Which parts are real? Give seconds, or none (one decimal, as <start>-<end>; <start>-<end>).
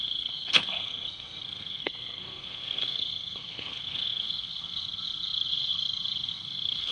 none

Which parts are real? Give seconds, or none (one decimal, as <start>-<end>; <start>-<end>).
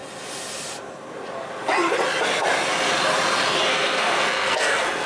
0.0-3.7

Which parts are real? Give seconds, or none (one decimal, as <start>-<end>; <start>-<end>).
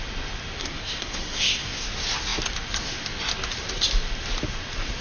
0.0-0.6; 1.9-5.0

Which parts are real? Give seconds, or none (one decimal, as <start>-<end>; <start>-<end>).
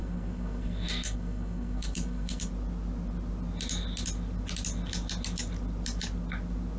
2.5-6.8